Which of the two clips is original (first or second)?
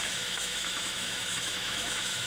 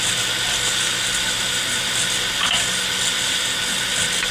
second